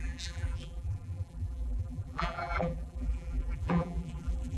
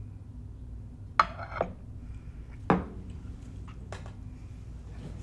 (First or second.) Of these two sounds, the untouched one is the second